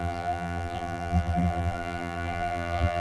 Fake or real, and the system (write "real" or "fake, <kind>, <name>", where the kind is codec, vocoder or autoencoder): fake, vocoder, BigVGAN v2